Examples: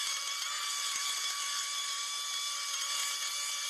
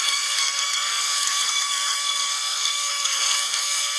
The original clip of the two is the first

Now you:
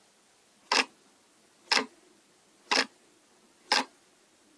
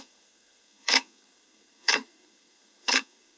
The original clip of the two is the first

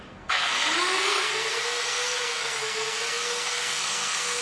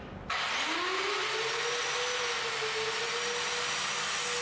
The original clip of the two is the second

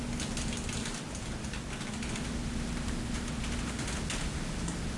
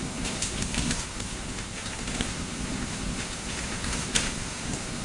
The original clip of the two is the first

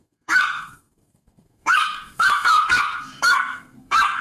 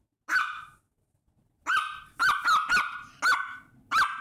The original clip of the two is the second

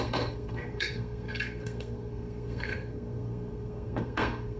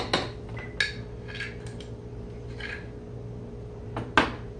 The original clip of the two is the second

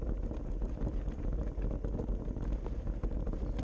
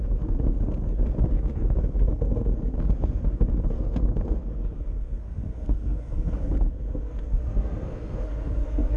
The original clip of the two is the first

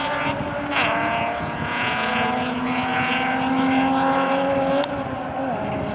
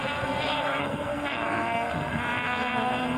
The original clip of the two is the first